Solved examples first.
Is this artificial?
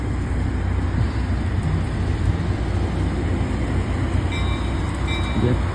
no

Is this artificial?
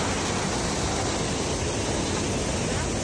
no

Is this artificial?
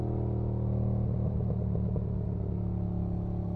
no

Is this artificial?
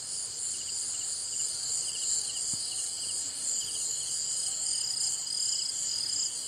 no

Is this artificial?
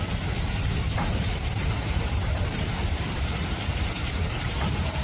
yes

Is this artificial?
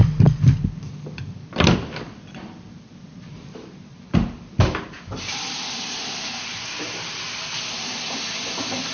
yes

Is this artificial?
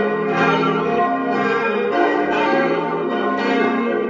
yes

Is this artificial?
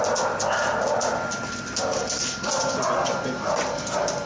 no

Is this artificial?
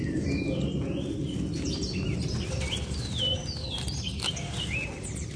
no